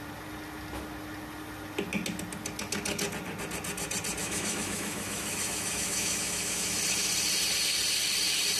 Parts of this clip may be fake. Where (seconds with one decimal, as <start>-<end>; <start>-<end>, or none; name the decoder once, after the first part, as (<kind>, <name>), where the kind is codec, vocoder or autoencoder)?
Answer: 4.2-6.8 (autoencoder, DAC-VAE)